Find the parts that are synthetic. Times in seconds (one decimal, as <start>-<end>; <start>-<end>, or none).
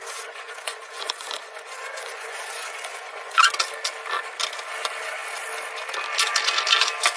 0.0-3.4